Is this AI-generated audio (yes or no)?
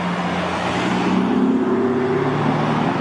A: no